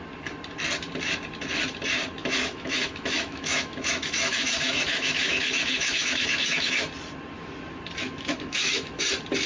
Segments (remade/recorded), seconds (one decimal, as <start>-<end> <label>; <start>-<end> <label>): 0.0-2.2 recorded; 2.2-6.9 remade; 6.9-8.0 recorded; 8.0-9.0 remade; 9.0-9.5 recorded

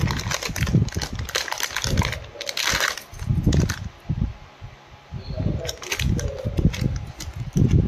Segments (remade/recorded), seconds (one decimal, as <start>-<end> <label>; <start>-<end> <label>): 0.0-7.9 recorded

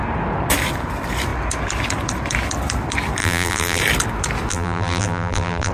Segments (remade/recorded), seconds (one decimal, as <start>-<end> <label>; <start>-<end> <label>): 0.0-3.2 recorded; 3.2-3.8 remade; 3.8-4.5 recorded; 4.5-5.7 remade